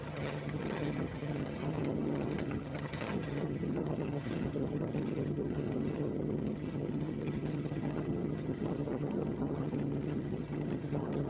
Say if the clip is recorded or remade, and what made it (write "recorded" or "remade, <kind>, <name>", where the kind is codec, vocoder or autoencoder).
remade, vocoder, HiFi-GAN